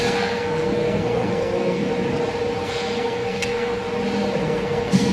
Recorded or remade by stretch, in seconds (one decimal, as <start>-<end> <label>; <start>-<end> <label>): 0.0-1.9 remade; 1.9-2.6 recorded; 2.6-3.8 remade; 3.8-4.4 recorded; 4.4-5.1 remade